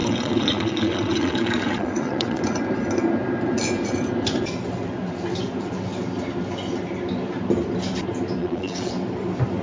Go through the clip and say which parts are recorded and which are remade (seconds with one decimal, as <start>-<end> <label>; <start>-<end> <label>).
0.0-2.4 remade; 2.4-8.4 recorded; 8.4-8.9 remade; 8.9-9.6 recorded